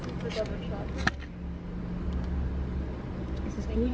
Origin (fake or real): real